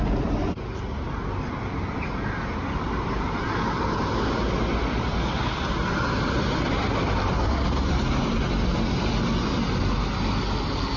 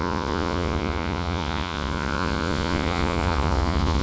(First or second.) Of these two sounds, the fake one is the second